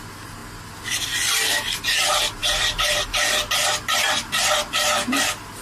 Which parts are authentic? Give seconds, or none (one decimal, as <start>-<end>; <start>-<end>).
0.0-5.6